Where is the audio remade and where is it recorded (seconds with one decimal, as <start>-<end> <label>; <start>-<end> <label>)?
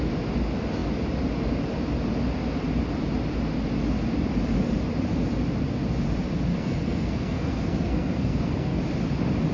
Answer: 0.0-6.5 recorded; 6.5-8.8 remade; 8.8-9.5 recorded